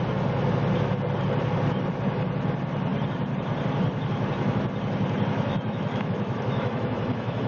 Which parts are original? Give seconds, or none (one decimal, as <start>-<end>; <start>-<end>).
0.0-5.5